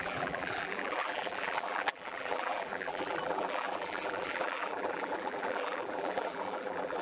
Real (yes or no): no